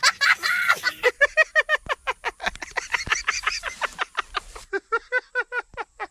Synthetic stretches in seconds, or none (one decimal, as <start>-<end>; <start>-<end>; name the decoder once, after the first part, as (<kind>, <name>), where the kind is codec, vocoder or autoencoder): 3.1-3.7 (vocoder, BigVGAN v2); 4.6-6.1